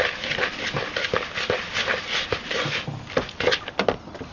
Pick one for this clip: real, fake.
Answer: real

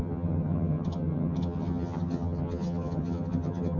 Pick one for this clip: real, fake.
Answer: fake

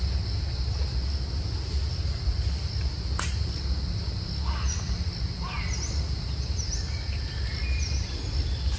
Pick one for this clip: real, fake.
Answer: real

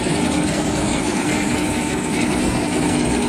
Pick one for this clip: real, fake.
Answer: fake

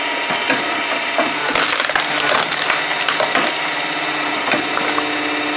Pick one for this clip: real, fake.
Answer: real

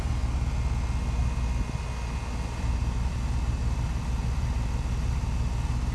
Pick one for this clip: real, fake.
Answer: real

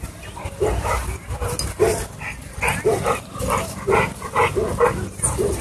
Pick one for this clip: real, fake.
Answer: real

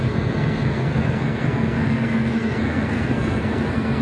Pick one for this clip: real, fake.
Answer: fake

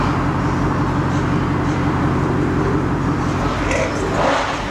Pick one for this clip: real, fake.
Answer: real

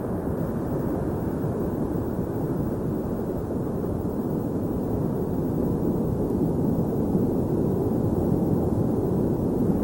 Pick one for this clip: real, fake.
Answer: real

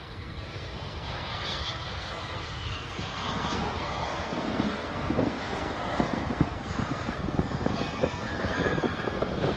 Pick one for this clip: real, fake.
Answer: fake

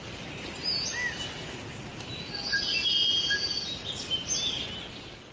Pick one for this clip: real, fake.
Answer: real